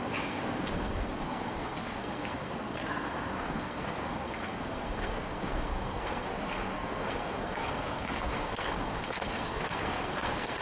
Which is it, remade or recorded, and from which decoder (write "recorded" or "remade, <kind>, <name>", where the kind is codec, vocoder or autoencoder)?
remade, codec, SNAC